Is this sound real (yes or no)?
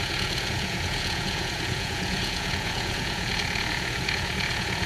no